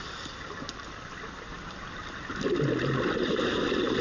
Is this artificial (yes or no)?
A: no